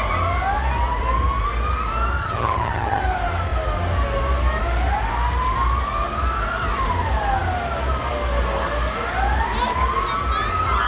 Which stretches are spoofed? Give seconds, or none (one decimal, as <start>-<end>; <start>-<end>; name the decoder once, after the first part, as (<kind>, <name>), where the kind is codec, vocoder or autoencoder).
2.2-3.0 (vocoder, HiFi-GAN)